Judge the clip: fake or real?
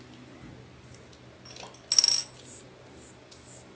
real